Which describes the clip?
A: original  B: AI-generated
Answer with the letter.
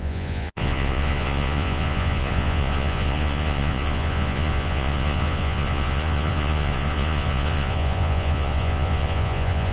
B